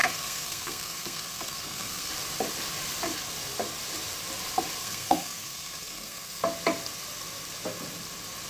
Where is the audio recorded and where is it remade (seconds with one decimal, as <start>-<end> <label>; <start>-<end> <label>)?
0.0-2.1 remade; 2.1-4.8 recorded; 4.8-6.4 remade; 6.4-8.5 recorded